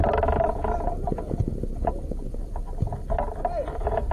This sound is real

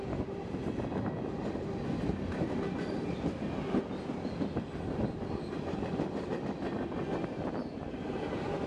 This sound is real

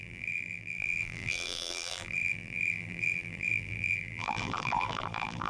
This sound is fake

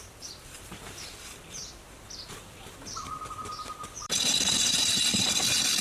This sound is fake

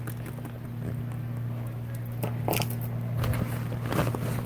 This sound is real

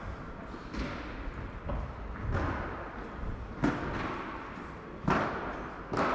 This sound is real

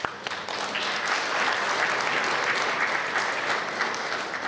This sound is real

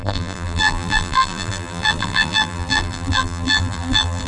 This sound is fake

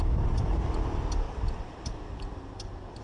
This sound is fake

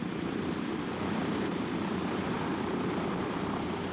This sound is fake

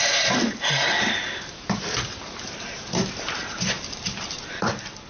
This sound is fake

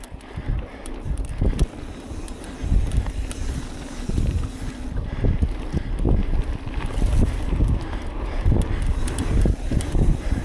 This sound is real